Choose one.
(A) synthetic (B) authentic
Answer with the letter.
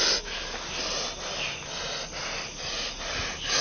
B